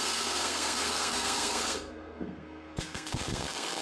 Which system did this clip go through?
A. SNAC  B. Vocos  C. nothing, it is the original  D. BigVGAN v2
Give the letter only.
A